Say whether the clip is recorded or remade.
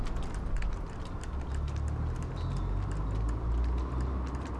recorded